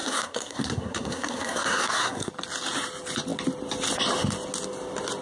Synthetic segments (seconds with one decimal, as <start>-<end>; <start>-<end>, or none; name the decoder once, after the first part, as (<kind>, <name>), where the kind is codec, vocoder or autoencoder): 0.0-2.3 (codec, SNAC)